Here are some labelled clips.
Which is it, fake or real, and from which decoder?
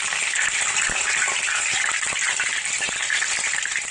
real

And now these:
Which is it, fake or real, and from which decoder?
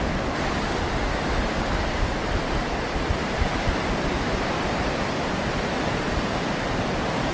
real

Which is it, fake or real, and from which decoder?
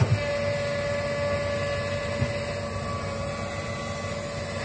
real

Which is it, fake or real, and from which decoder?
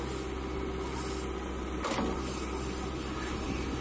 real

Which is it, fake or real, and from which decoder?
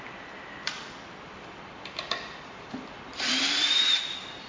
fake, vocoder, BigVGAN v2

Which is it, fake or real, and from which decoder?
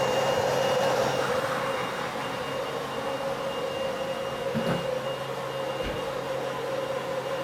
real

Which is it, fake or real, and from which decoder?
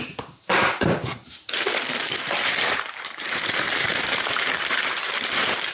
fake, vocoder, BigVGAN v2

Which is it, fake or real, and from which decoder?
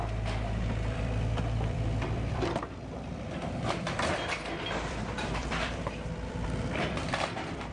fake, vocoder, BigVGAN v2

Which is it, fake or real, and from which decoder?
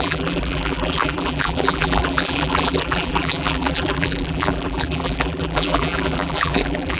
fake, vocoder, BigVGAN v2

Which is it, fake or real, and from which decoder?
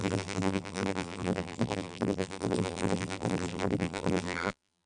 fake, vocoder, BigVGAN v2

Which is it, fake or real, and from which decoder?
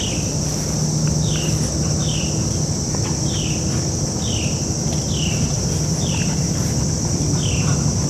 real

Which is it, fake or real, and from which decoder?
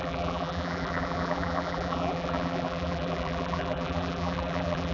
fake, vocoder, BigVGAN v2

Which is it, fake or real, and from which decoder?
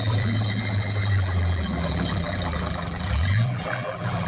fake, vocoder, BigVGAN v2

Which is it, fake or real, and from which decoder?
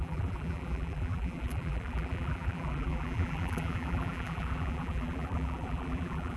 fake, vocoder, BigVGAN v2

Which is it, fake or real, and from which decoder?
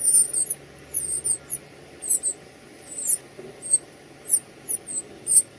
real